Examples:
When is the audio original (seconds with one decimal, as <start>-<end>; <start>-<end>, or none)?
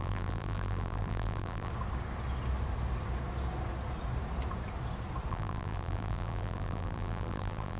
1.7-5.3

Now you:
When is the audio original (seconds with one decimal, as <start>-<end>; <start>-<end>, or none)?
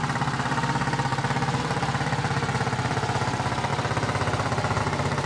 1.1-1.6; 3.7-4.8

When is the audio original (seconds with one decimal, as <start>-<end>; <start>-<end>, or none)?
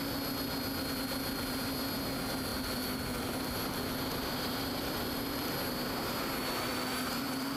0.0-2.5; 5.5-6.7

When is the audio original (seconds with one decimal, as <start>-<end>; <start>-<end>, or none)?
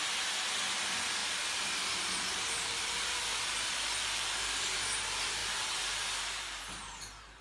0.0-1.2; 4.8-7.4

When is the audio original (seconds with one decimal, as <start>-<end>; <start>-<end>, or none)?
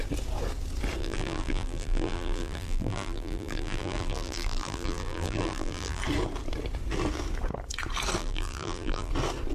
0.0-1.0; 6.0-8.2; 9.1-9.5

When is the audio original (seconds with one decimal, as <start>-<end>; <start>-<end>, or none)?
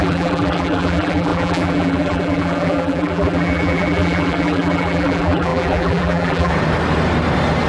6.5-7.7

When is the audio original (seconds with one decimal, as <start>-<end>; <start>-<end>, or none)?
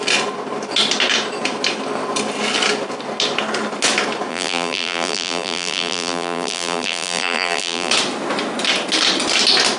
0.0-4.3; 7.9-9.8